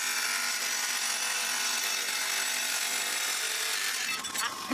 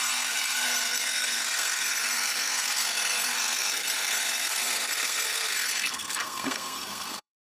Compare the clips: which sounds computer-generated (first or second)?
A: second